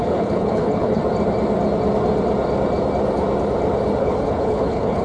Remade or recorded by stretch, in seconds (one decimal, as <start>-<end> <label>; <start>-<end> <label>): 0.0-1.0 remade; 1.0-4.0 recorded; 4.0-5.0 remade